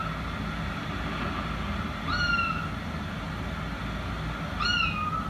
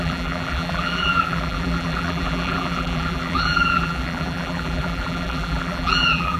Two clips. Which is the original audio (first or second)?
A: first